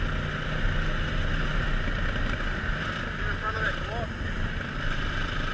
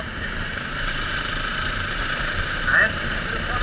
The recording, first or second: first